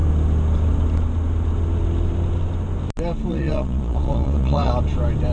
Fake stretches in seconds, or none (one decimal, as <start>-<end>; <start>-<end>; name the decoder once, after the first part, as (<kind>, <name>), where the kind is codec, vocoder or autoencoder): 3.3-4.7 (vocoder, Vocos)